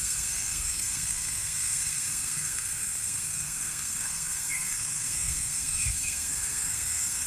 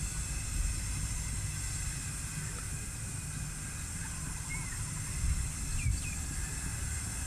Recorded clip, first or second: second